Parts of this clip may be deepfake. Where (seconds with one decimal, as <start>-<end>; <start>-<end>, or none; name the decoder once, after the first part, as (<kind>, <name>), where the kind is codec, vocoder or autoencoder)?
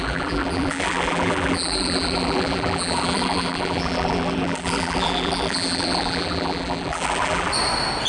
0.0-7.5 (vocoder, BigVGAN v2)